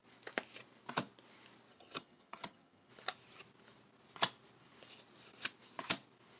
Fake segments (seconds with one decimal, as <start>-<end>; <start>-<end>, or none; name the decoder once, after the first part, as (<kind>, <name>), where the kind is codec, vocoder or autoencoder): 1.7-2.9 (vocoder, HiFi-GAN)